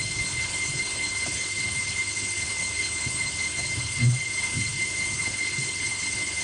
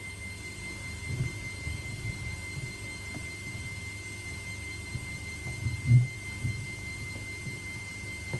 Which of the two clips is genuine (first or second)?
second